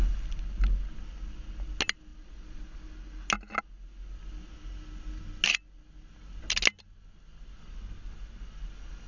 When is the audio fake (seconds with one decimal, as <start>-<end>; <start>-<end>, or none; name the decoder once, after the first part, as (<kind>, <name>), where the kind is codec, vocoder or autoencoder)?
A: none